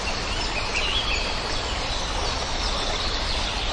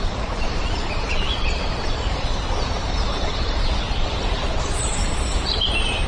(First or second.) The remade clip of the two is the second